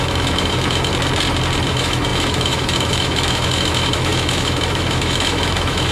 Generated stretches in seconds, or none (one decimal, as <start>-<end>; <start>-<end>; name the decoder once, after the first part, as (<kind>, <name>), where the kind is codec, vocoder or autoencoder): 0.0-0.9 (autoencoder, DAC-VAE); 1.7-5.9